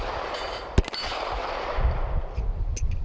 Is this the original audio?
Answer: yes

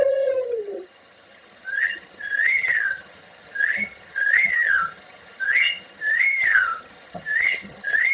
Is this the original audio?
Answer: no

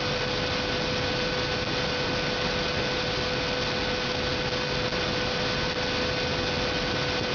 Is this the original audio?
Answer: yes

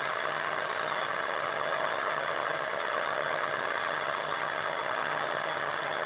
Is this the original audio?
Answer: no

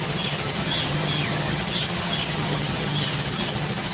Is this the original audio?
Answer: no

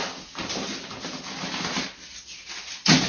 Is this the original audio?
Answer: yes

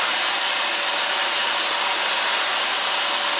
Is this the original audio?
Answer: yes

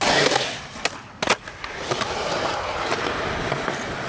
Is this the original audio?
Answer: yes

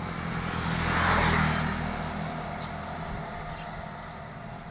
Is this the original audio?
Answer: yes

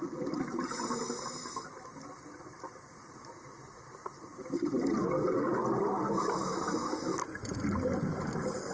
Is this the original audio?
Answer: yes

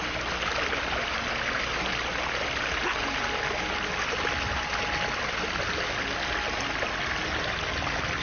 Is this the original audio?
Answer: yes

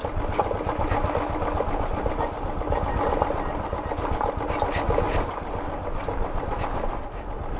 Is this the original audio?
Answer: yes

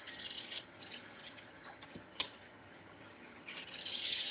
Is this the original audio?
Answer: no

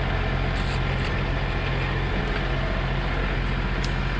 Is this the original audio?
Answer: yes